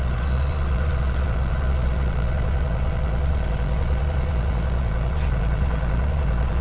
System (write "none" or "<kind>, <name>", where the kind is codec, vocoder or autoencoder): vocoder, Vocos